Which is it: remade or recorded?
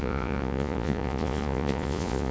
remade